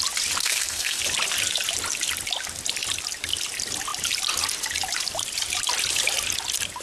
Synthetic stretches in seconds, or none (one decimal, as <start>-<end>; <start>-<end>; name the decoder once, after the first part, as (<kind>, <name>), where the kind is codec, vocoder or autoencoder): 0.4-1.0 (codec, SNAC)

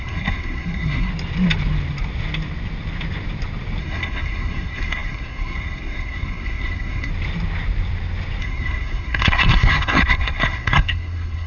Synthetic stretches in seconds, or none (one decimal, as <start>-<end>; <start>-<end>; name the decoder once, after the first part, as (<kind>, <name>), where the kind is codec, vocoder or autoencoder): 0.0-1.1 (codec, SNAC); 3.8-7.1; 8.4-11.5

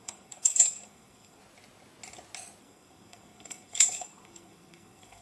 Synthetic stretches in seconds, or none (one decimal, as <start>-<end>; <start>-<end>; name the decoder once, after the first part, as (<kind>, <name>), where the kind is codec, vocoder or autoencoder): 0.0-1.4 (codec, SNAC); 2.6-5.2

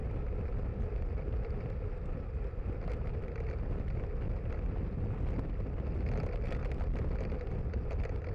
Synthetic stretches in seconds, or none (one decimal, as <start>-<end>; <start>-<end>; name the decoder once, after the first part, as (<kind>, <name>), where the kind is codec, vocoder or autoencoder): none

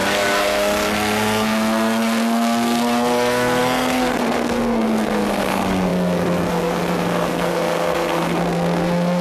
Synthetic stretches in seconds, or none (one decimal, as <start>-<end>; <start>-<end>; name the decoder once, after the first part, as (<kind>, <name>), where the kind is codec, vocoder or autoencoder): 0.0-9.2 (codec, SNAC)

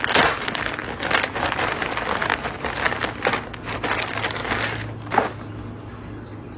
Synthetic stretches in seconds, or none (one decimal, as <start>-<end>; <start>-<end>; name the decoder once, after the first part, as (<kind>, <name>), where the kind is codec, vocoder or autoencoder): none